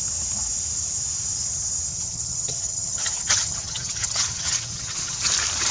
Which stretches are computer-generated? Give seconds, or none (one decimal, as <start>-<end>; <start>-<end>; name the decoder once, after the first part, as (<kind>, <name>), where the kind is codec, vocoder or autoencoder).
1.9-5.3 (vocoder, HiFi-GAN)